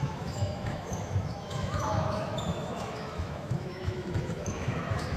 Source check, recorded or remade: remade